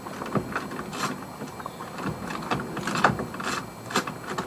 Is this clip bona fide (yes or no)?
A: yes